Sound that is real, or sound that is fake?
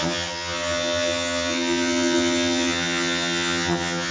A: fake